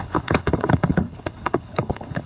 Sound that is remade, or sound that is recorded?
remade